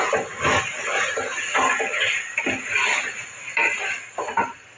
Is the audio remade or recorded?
recorded